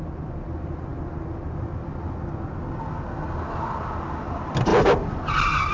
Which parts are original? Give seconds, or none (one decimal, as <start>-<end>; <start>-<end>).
0.0-5.7